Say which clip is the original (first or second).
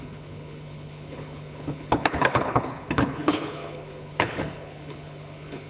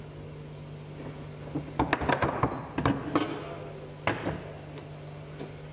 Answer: second